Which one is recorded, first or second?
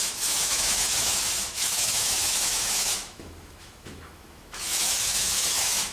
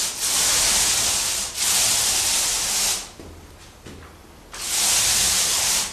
second